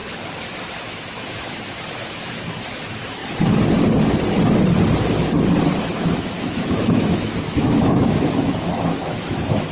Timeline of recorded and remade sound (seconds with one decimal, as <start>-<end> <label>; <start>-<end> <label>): 0.0-0.8 recorded; 0.8-3.2 remade; 3.2-5.8 recorded; 5.8-9.7 remade

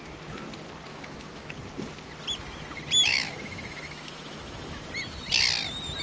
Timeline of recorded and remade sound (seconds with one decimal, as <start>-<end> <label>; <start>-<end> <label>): 0.0-0.9 recorded; 0.9-1.5 remade; 1.5-3.1 recorded; 3.1-4.9 remade; 4.9-6.0 recorded

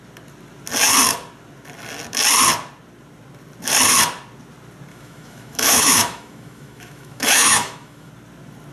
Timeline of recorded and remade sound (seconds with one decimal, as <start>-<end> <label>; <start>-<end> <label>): 0.0-4.9 recorded; 4.9-8.1 remade; 8.1-8.7 recorded

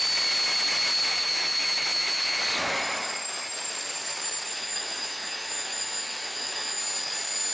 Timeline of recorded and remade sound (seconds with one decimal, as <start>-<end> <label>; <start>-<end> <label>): 0.0-1.1 recorded; 1.1-2.4 remade; 2.4-4.5 recorded; 4.5-6.8 remade; 6.8-7.5 recorded